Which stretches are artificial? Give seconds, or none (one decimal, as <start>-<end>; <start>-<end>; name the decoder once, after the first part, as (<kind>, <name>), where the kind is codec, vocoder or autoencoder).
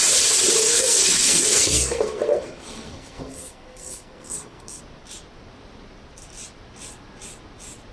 0.6-4.8 (codec, SNAC)